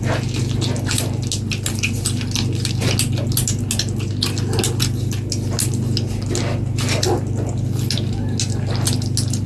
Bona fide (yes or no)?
yes